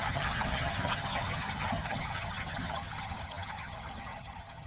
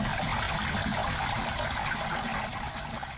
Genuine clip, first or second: second